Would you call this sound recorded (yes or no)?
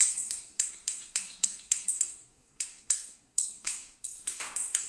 no